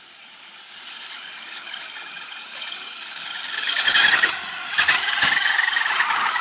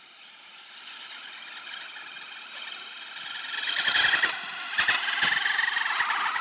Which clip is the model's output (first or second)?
first